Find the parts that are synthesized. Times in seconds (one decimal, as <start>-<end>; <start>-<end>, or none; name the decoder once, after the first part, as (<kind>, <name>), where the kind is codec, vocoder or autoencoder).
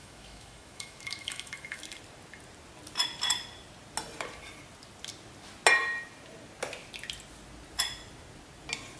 0.0-1.8 (autoencoder, DAC-VAE)